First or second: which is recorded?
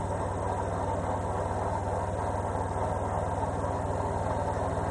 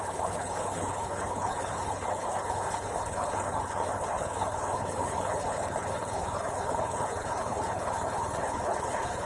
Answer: first